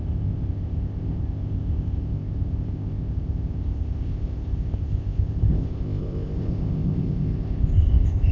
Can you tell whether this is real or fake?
fake